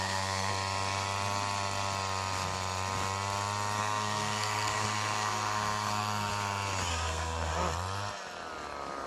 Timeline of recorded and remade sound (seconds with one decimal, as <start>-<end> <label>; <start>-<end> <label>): 0.0-0.5 remade; 0.5-3.8 recorded; 3.8-6.3 remade; 6.3-6.9 recorded; 6.9-7.5 remade; 7.5-9.1 recorded

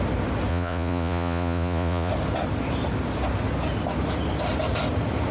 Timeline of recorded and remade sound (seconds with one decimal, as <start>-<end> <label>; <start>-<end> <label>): 0.0-0.5 recorded; 0.5-2.1 remade; 2.1-5.3 recorded

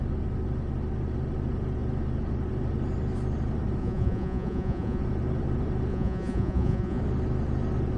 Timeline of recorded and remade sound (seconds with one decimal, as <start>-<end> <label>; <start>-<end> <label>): 0.0-3.8 recorded; 3.8-5.0 remade; 5.0-5.9 recorded; 5.9-7.0 remade; 7.0-8.0 recorded

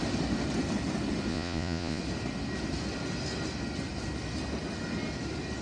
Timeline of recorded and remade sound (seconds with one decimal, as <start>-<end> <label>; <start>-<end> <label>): 0.0-1.3 recorded; 1.3-2.0 remade; 2.0-5.6 recorded

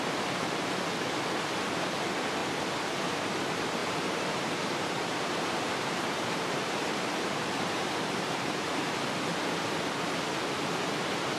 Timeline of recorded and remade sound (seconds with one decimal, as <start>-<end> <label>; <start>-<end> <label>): 0.0-3.8 recorded; 3.8-8.7 remade; 8.7-11.4 recorded

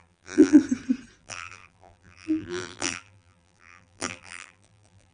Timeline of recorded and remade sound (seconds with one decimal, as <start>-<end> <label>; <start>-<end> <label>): 0.0-0.6 remade; 0.6-1.2 recorded; 1.2-5.1 remade

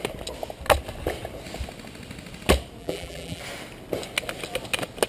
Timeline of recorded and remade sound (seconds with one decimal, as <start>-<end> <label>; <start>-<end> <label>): 0.0-2.8 recorded; 2.8-3.4 remade; 3.4-5.1 recorded